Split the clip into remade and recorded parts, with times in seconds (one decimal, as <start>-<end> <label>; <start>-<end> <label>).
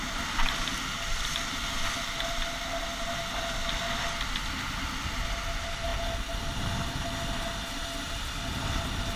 0.0-9.2 recorded